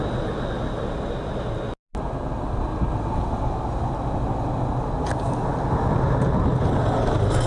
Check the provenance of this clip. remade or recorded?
recorded